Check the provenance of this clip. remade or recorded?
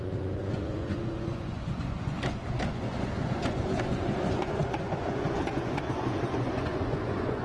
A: remade